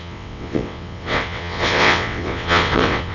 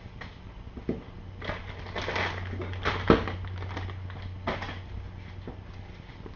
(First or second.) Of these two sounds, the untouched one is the second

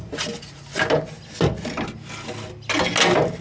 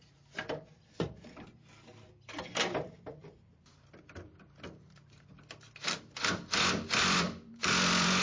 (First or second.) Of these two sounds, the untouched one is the first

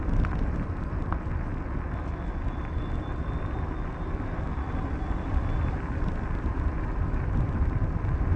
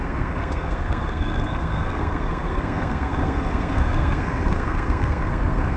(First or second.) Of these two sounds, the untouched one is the first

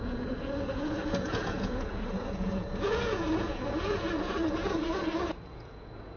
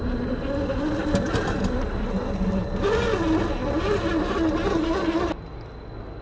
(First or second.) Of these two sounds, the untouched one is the second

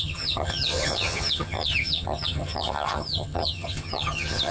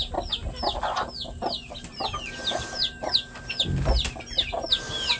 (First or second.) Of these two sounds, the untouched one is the second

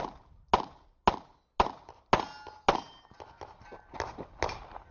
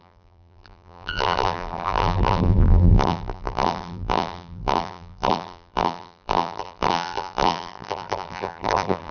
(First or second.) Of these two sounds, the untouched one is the first